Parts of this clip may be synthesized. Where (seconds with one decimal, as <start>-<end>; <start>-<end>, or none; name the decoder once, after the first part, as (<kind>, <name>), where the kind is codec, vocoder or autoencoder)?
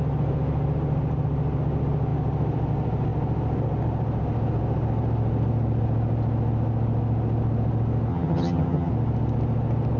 8.1-8.9 (vocoder, HiFi-GAN)